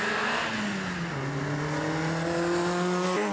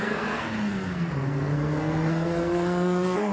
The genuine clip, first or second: first